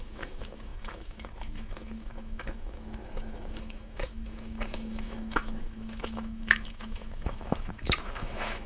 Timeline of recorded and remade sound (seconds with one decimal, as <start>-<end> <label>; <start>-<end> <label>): 0.0-8.7 remade